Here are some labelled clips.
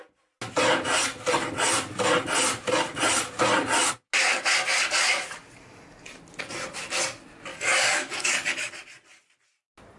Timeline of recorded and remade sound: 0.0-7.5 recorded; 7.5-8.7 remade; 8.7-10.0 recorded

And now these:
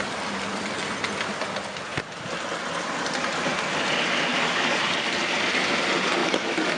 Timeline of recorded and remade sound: 0.0-4.3 recorded; 4.3-4.8 remade; 4.8-6.2 recorded; 6.2-6.8 remade

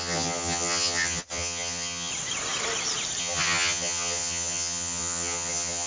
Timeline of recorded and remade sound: 0.0-2.1 remade; 2.1-3.2 recorded; 3.2-5.9 remade

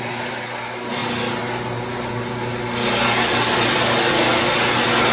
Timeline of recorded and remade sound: 0.0-5.1 recorded

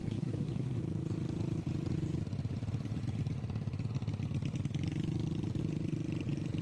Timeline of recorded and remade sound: 0.0-0.8 remade; 0.8-6.6 recorded

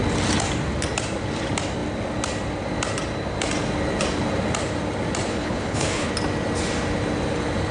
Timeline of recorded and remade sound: 0.0-5.3 recorded; 5.3-6.1 remade; 6.1-7.7 recorded

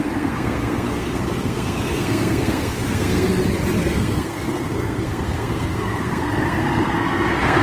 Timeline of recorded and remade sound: 0.0-3.3 remade; 3.3-3.8 recorded; 3.8-7.6 remade